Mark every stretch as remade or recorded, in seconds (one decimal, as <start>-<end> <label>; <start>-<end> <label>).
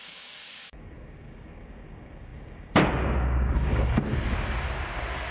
0.0-4.2 remade; 4.2-5.3 recorded